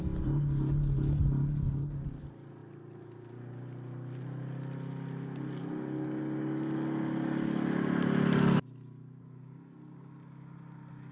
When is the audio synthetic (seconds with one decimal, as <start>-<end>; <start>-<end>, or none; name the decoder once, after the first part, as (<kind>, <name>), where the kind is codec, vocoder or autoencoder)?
none

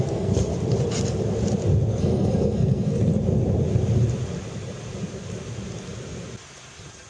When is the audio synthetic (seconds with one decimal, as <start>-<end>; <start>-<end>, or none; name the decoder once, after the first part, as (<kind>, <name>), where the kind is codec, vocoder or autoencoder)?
0.0-0.5 (codec, SNAC); 1.9-3.1

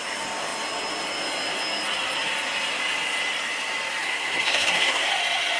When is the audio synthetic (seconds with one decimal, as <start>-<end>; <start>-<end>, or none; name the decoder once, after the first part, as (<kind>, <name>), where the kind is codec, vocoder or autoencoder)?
4.0-5.1 (codec, SNAC)

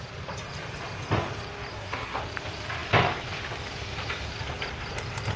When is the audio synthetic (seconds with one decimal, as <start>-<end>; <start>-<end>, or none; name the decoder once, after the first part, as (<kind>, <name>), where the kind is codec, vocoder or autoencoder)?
1.7-2.2 (codec, SNAC)

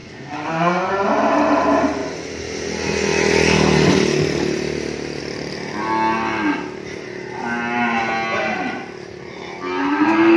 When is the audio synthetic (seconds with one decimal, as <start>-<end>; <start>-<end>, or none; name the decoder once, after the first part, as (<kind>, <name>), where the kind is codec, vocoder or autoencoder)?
0.0-0.9 (codec, SNAC); 9.8-10.4